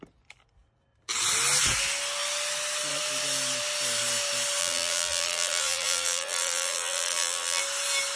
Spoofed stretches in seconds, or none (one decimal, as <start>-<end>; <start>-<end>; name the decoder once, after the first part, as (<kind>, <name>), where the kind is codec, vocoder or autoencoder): 4.6-7.6 (vocoder, BigVGAN v2)